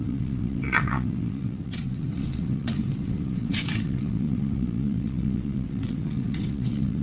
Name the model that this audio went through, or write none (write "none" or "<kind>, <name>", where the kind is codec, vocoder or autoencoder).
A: vocoder, WaveNeXt